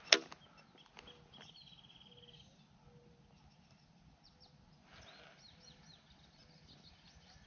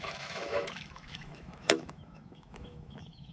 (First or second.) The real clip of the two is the first